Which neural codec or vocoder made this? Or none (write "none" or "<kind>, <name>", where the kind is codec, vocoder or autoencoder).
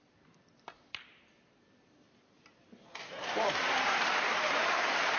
vocoder, BigVGAN v2